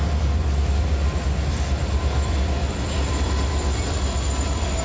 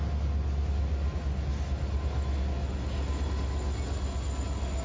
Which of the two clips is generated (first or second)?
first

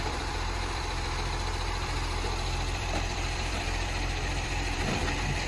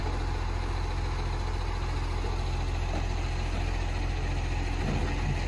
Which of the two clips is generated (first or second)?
first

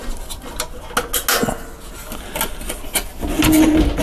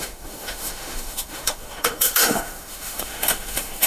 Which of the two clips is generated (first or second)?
second